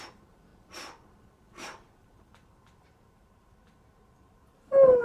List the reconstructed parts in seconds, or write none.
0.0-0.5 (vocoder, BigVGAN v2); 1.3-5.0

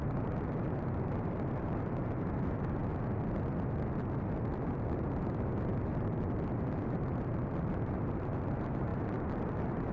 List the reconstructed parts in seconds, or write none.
0.0-2.8 (vocoder, BigVGAN v2); 4.5-9.9

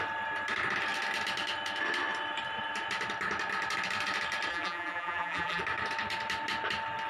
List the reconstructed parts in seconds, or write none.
4.5-5.6 (vocoder, BigVGAN v2)

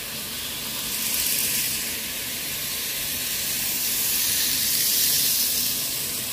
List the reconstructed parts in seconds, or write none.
1.4-2.9 (vocoder, BigVGAN v2)

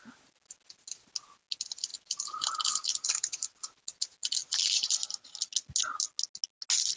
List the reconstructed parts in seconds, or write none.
4.4-5.3 (vocoder, BigVGAN v2)

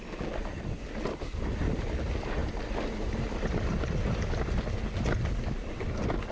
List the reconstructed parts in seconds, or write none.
none

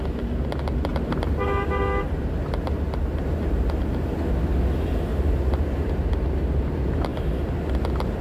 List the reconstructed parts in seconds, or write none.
0.9-4.1 (vocoder, BigVGAN v2); 5.1-5.9